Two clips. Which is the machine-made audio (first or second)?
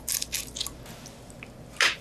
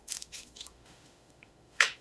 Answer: second